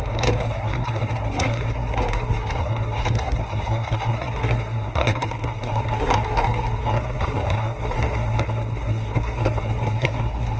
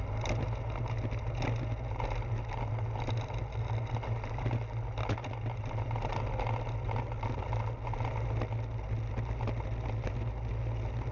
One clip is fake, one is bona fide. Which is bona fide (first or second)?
second